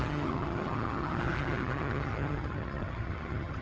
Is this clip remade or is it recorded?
remade